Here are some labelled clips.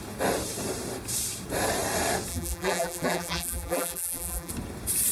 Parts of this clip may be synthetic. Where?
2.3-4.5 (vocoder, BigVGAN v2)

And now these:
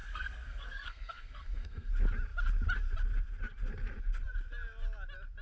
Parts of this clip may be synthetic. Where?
0.0-1.9 (codec, SNAC)

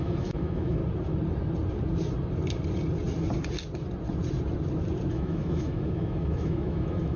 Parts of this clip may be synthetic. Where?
0.0-0.8 (autoencoder, DAC-VAE); 5.1-7.2

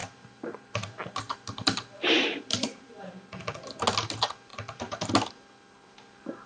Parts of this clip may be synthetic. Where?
0.0-3.1 (vocoder, BigVGAN v2)

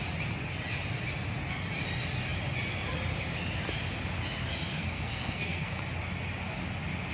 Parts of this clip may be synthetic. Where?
4.7-5.7 (codec, SNAC)